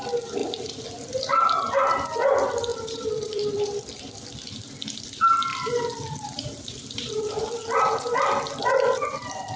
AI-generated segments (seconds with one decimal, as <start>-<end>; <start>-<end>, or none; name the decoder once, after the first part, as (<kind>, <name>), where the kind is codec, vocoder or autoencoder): 0.4-1.4 (vocoder, BigVGAN v2); 2.7-4.1; 5.5-8.1